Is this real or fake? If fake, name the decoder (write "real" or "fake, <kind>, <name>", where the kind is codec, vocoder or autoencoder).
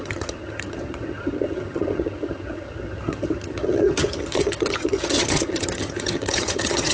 fake, vocoder, HiFi-GAN